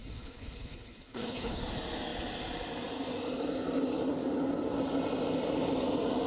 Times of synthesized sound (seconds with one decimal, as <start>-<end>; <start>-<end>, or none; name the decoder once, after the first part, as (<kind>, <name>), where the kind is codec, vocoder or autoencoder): 0.0-1.6 (codec, HILCodec)